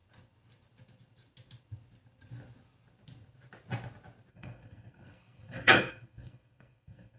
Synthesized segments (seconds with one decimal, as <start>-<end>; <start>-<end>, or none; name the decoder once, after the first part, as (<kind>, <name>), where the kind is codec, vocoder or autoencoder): 4.3-7.2 (codec, SNAC)